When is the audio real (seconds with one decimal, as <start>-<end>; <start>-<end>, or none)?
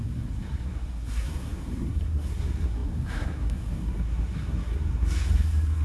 none